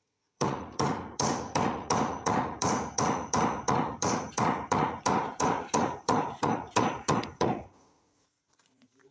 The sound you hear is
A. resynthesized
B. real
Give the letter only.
A